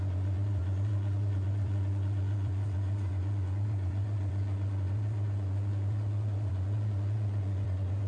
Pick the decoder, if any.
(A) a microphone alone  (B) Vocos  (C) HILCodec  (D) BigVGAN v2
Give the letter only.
B